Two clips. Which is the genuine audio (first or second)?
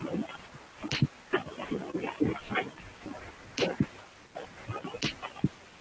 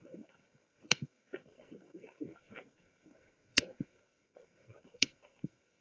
first